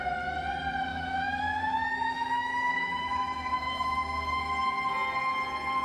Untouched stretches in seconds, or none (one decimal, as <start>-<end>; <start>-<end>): 0.0-0.9; 4.4-5.8